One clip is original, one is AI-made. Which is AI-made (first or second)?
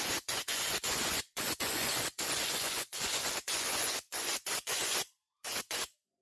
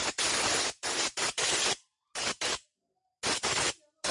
first